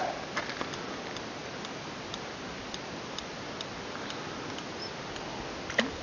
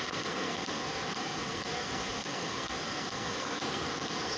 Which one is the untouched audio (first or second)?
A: first